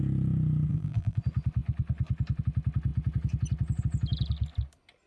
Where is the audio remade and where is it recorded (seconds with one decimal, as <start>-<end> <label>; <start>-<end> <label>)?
0.0-0.7 recorded; 0.7-1.2 remade; 1.2-5.1 recorded